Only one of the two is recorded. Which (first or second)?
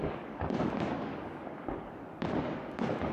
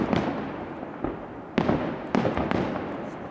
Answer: second